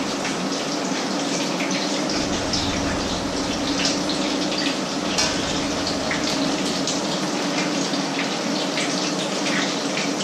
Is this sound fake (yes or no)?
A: no